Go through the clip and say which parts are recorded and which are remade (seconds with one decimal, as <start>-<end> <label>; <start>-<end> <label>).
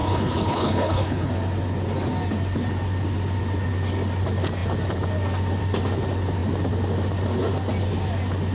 0.0-1.3 remade; 1.3-8.5 recorded